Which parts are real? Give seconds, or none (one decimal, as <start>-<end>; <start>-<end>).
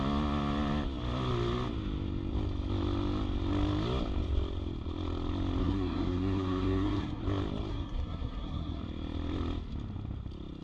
0.0-5.6; 7.2-7.7; 8.8-10.6